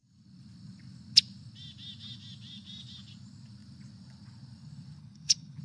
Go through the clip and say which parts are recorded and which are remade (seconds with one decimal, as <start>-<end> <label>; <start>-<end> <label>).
0.0-5.0 recorded; 5.0-5.6 remade